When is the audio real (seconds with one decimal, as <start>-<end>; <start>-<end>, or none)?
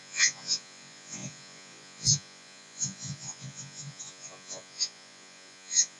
none